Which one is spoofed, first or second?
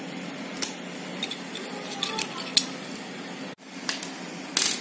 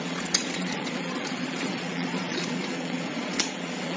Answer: second